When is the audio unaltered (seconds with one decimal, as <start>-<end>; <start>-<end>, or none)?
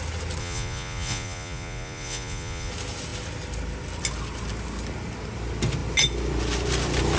0.0-0.4; 2.7-7.2